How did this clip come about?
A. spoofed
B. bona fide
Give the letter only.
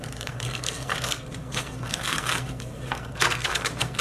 A